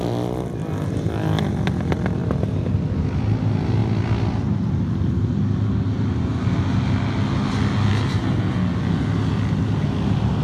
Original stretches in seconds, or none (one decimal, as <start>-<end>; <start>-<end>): 0.0-10.4